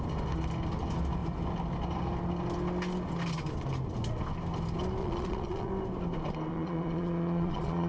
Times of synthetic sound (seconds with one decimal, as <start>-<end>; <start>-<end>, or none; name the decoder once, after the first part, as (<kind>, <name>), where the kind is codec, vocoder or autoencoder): 5.0-5.7 (vocoder, Vocos); 6.5-7.9